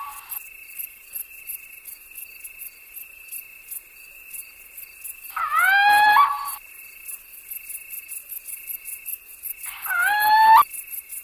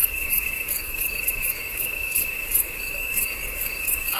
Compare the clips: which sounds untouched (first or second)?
first